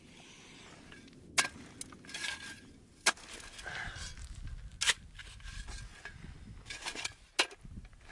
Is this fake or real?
real